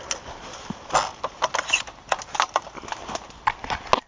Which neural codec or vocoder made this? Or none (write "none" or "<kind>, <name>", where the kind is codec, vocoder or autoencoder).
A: none